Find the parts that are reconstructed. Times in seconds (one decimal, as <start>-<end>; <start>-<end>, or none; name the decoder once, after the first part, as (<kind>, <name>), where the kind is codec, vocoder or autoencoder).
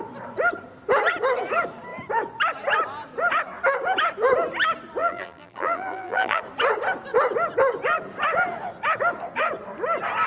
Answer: 5.0-6.4 (vocoder, BigVGAN v2)